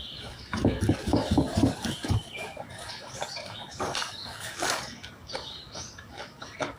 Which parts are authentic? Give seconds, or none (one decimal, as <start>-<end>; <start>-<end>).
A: none